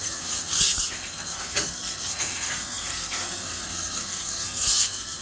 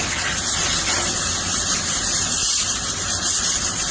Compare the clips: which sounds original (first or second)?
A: second